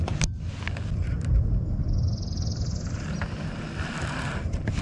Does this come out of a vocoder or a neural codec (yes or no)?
no